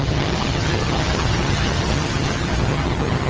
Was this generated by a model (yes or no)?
yes